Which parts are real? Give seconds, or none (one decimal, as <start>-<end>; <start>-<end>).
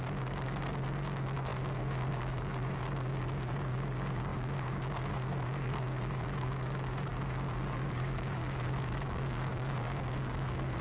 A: none